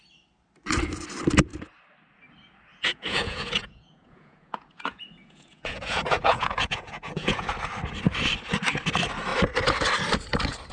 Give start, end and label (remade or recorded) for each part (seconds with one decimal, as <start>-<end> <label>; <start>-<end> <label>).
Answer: 0.0-2.7 recorded; 2.7-7.5 remade; 7.5-10.7 recorded